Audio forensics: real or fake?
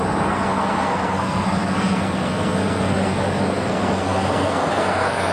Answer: fake